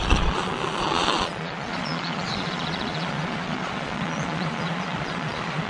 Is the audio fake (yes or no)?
yes